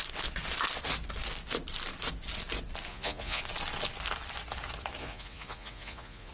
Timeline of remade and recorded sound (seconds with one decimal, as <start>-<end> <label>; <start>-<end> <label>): 0.0-2.9 recorded; 2.9-3.4 remade; 3.4-5.0 recorded; 5.0-6.3 remade